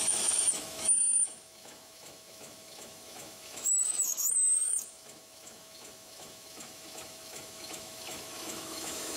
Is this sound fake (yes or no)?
yes